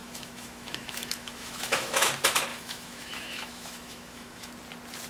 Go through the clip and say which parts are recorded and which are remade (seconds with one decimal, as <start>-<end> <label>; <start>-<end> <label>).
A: 0.0-2.1 remade; 2.1-2.5 recorded; 2.5-4.5 remade; 4.5-5.1 recorded